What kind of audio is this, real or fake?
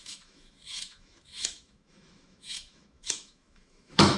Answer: fake